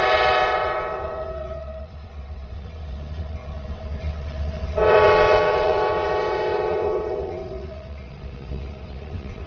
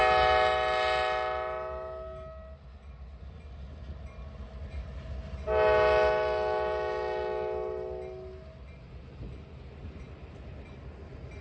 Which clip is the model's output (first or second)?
first